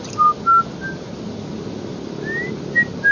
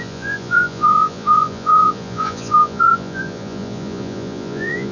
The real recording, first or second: first